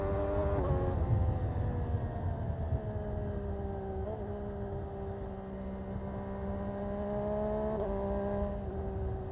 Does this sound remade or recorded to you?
recorded